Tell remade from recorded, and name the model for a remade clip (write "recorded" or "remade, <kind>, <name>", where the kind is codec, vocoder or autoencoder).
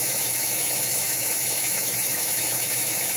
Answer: remade, autoencoder, DAC-VAE